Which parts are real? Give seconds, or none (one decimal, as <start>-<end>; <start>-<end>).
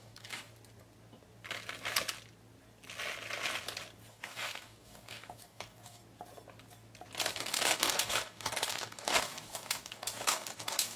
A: 0.5-4.1; 6.0-7.3